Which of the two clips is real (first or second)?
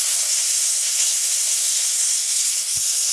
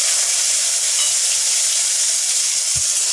second